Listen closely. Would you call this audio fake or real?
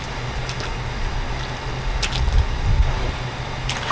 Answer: real